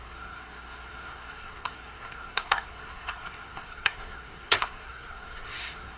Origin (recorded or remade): remade